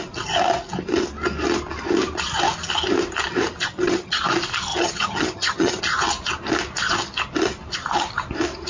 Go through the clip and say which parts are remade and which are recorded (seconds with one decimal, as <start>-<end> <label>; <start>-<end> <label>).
0.0-3.7 recorded; 3.7-4.2 remade; 4.2-4.7 recorded; 4.7-5.8 remade; 5.8-8.7 recorded